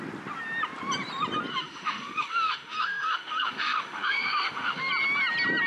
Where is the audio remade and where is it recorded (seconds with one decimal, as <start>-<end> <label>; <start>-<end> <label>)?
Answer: 0.0-1.5 recorded; 1.5-4.9 remade; 4.9-5.7 recorded